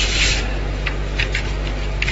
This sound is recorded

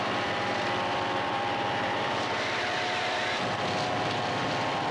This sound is remade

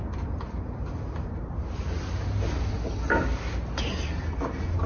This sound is recorded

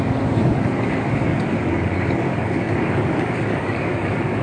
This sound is remade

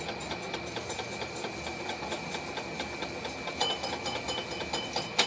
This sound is recorded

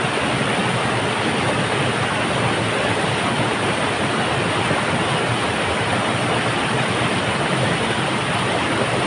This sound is recorded